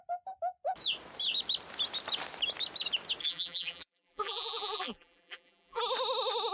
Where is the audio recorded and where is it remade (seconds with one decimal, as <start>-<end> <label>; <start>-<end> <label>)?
0.0-3.2 recorded; 3.2-5.8 remade; 5.8-6.5 recorded